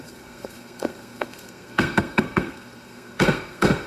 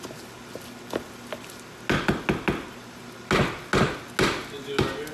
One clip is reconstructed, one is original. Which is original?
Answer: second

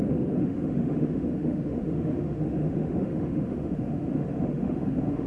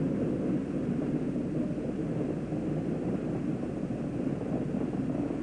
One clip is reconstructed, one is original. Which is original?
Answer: second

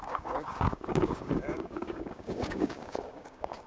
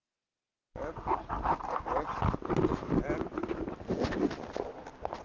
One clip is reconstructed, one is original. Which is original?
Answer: second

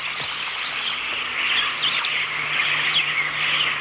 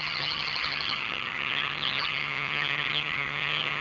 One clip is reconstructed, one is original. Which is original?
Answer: first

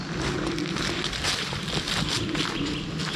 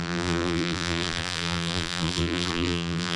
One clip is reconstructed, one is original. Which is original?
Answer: first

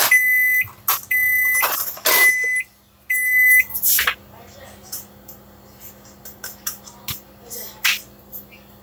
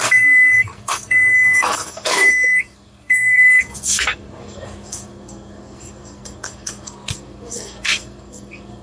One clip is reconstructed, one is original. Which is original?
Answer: first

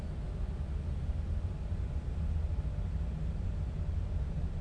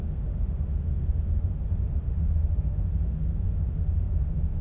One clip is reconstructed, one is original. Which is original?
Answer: first